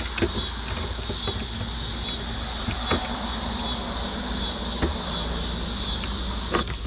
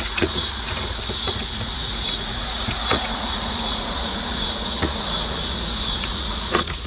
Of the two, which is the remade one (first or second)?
second